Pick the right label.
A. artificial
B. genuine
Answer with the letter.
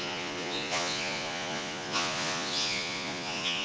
A